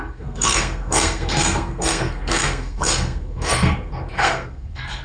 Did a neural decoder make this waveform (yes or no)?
yes